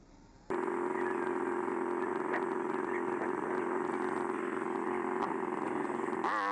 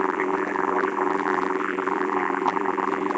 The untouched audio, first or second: first